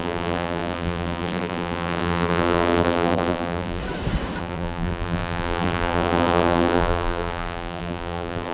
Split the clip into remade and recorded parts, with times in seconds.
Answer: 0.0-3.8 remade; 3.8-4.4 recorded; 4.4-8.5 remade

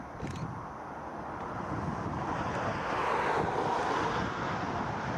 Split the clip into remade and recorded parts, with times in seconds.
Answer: 0.0-5.2 recorded

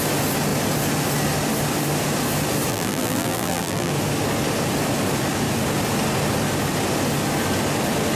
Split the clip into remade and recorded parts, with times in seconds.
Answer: 0.0-2.7 recorded; 2.7-3.9 remade; 3.9-8.2 recorded

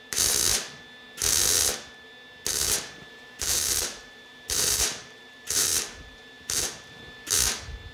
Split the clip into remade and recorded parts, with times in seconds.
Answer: 0.0-2.5 recorded; 2.5-7.0 remade; 7.0-7.9 recorded

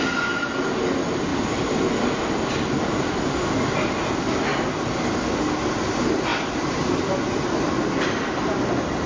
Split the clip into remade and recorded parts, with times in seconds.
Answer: 0.0-1.3 recorded; 1.3-3.3 remade; 3.3-6.3 recorded; 6.3-7.4 remade; 7.4-9.1 recorded